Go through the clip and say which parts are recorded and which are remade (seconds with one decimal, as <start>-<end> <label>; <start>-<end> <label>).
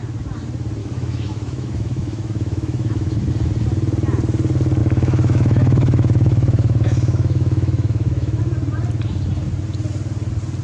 0.0-0.8 recorded; 0.8-3.3 remade; 3.3-4.8 recorded; 4.8-8.4 remade; 8.4-10.6 recorded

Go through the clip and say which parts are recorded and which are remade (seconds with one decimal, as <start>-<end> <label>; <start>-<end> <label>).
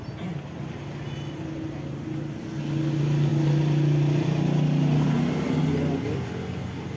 0.0-7.0 recorded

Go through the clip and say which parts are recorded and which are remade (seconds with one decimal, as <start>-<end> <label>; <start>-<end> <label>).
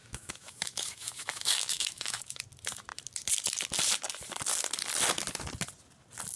0.0-2.4 remade; 2.4-6.4 recorded